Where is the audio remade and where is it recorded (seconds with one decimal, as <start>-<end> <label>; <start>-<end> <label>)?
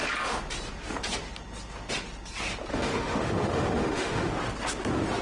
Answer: 0.0-2.7 recorded; 2.7-4.3 remade; 4.3-5.2 recorded